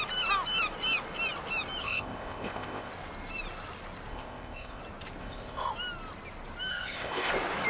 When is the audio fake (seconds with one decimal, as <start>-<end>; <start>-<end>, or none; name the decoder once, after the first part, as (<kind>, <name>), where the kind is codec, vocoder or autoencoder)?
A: 1.8-2.9 (codec, ZipCodec); 4.1-4.8; 5.2-5.7; 6.7-7.3